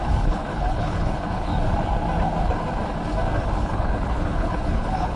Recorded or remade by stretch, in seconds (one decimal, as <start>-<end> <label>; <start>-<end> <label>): 0.0-1.5 remade; 1.5-3.6 recorded; 3.6-5.2 remade